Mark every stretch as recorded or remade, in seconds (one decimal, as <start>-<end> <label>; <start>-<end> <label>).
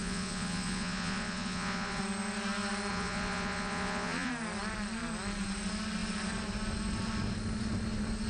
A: 0.0-2.0 remade; 2.0-2.9 recorded; 2.9-4.3 remade; 4.3-8.3 recorded